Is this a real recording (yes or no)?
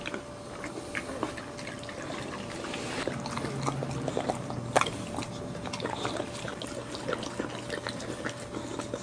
yes